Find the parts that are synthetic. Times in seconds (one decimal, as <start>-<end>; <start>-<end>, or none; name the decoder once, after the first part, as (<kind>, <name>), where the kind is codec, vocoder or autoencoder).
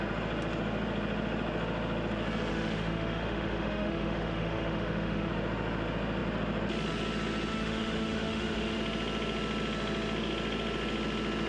2.5-5.3 (autoencoder, DAC-VAE); 7.5-8.8